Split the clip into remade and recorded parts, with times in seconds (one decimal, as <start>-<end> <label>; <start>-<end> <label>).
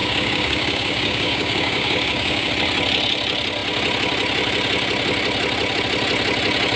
0.0-2.5 remade; 2.5-6.8 recorded